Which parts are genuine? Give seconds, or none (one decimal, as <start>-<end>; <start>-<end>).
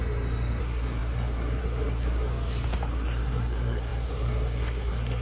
0.0-0.6; 2.3-2.9